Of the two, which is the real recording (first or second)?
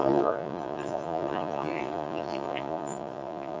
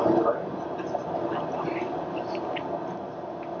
second